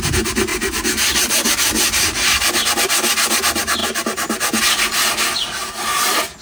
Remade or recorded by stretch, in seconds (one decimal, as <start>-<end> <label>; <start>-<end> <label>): 0.0-0.5 recorded; 0.5-1.5 remade; 1.5-6.4 recorded